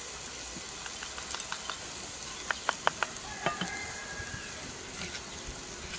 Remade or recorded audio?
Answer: recorded